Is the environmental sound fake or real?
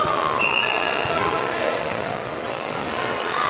fake